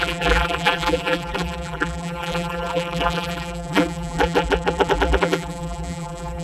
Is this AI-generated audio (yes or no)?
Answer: yes